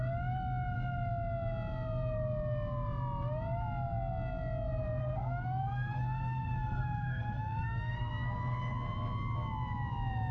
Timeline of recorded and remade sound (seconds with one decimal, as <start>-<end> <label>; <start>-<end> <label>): 0.0-5.0 recorded; 5.0-8.1 remade; 8.1-10.3 recorded